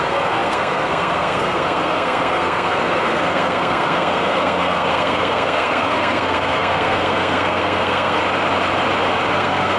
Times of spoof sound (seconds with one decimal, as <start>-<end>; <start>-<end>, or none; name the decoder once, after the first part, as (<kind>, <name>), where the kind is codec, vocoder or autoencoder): 0.0-8.2 (codec, SNAC); 9.3-9.8